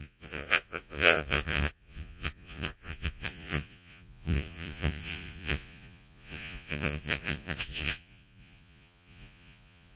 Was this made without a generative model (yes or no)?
no